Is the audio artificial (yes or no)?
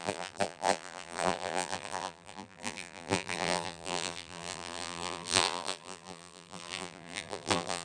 yes